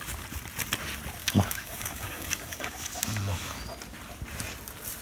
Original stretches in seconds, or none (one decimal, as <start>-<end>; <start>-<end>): 0.0-1.2; 3.7-5.0